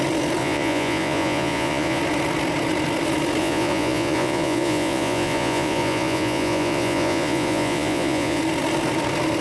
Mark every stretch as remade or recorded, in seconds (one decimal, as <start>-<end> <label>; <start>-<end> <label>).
0.0-0.4 recorded; 0.4-2.0 remade; 2.0-3.4 recorded; 3.4-8.4 remade; 8.4-9.4 recorded